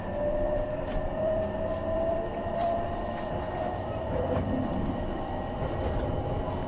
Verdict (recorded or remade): remade